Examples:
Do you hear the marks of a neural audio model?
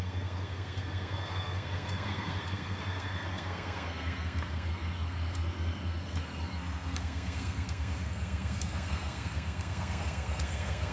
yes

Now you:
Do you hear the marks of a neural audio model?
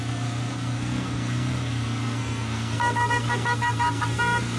yes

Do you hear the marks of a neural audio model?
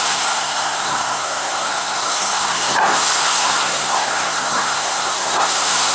yes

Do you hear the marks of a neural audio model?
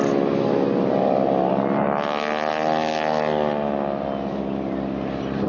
no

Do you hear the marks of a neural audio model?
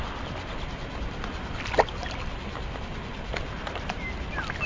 no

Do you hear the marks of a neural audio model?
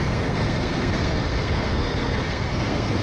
yes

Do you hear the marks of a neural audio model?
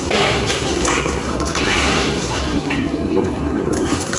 yes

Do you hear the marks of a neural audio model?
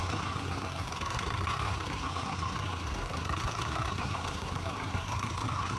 yes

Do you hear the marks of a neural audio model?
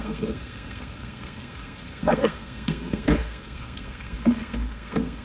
yes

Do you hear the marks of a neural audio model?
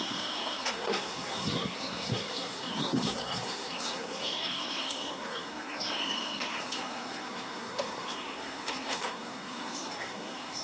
yes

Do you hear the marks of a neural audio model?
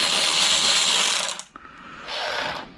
no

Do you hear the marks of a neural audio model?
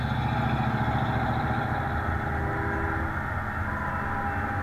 no